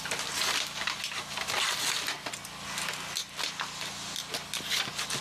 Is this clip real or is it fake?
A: real